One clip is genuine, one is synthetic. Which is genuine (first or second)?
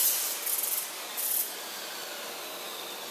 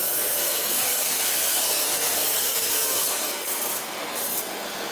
first